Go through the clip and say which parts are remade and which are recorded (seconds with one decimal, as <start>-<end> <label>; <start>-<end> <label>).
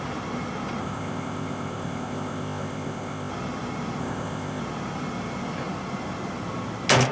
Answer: 0.0-0.8 recorded; 0.8-3.3 remade; 3.3-4.0 recorded; 4.0-4.6 remade; 4.6-7.1 recorded